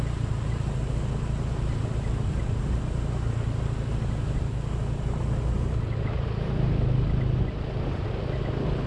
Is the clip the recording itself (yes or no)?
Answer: yes